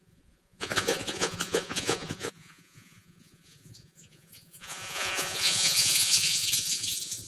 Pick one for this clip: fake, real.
fake